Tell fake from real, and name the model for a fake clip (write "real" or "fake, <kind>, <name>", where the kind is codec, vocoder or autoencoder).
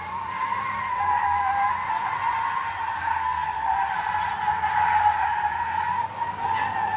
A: real